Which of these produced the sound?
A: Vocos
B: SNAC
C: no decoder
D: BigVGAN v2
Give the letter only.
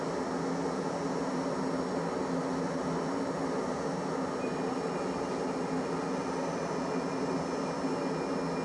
C